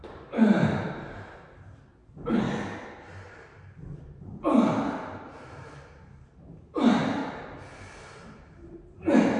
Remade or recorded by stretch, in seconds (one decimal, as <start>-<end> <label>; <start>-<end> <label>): 0.0-2.0 remade; 2.0-5.4 recorded; 5.4-7.2 remade; 7.2-8.4 recorded; 8.4-9.4 remade